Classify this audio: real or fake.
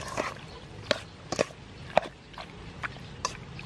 real